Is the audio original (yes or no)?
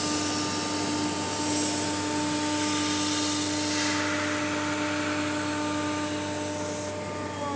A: yes